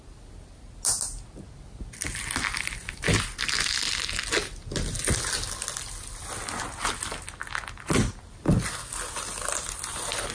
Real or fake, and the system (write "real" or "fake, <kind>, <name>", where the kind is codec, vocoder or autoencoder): real